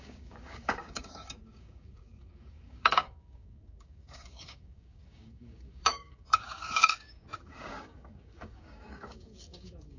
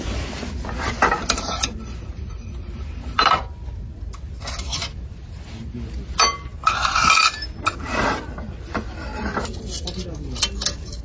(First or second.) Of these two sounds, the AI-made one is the first